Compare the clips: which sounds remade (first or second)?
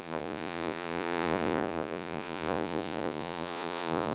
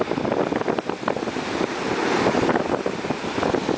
first